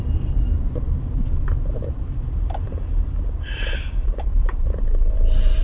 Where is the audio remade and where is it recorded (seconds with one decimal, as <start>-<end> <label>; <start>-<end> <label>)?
0.0-0.5 remade; 0.5-1.8 recorded; 1.8-5.6 remade